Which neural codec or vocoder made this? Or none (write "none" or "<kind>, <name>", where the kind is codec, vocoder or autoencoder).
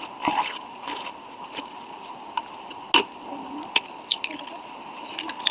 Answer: none